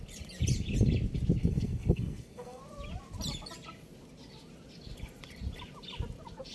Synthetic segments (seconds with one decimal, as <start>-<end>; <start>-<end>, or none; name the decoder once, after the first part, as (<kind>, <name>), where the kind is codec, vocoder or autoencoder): 1.4-2.6 (codec, SNAC)

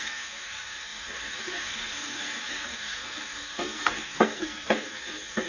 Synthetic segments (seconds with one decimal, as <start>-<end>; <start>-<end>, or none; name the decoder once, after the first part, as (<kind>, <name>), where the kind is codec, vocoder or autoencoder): 0.0-5.5 (codec, SNAC)

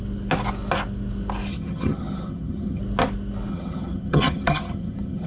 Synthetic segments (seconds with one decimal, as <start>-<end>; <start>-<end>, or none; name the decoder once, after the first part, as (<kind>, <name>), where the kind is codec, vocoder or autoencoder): 1.5-2.8 (vocoder, HiFi-GAN); 3.5-5.3

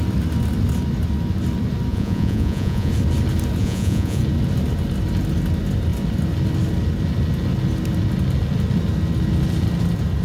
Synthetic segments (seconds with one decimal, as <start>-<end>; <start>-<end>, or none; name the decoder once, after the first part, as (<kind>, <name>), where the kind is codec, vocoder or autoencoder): 1.9-2.9 (vocoder, Vocos); 3.6-4.2

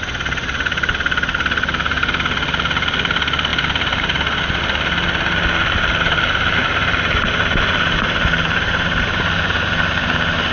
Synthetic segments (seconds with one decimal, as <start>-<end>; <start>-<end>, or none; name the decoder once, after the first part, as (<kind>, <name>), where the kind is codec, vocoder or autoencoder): 3.5-4.6 (vocoder, BigVGAN v2); 6.6-9.0

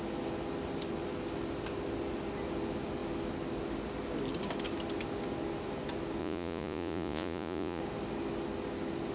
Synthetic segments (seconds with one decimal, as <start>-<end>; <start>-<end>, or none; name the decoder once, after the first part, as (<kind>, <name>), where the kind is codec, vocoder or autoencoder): 6.2-7.8 (vocoder, Vocos)